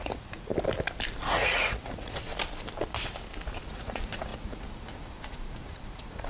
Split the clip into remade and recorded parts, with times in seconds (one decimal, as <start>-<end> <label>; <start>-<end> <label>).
0.0-0.5 remade; 0.5-1.3 recorded; 1.3-2.3 remade; 2.3-3.6 recorded; 3.6-6.3 remade